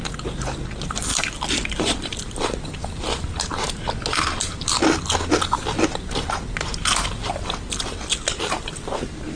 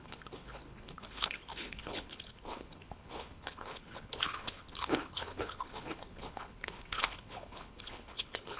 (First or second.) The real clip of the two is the first